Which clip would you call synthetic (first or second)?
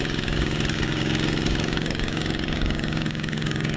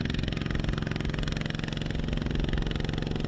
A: first